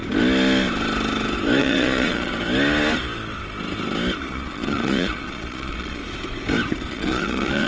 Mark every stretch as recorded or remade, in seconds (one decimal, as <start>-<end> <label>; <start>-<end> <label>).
0.0-1.6 recorded; 1.6-2.3 remade; 2.3-4.2 recorded; 4.2-6.0 remade; 6.0-6.9 recorded; 6.9-7.7 remade